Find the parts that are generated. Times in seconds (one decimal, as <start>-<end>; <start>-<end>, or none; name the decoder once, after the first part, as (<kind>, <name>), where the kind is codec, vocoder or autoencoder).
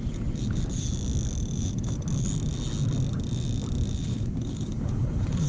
4.1-5.5 (codec, HILCodec)